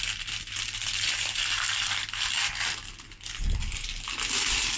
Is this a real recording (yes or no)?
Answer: yes